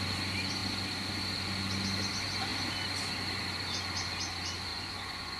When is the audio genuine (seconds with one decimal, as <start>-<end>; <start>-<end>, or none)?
0.0-4.7